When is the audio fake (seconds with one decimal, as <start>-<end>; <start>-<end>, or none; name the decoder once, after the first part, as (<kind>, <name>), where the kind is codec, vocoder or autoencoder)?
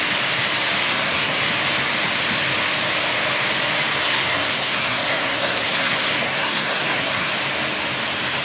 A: 0.8-1.4 (codec, SNAC); 4.0-7.3